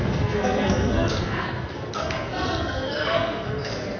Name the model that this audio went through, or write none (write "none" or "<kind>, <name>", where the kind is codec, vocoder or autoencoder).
codec, SNAC